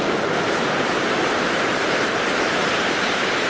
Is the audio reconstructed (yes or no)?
yes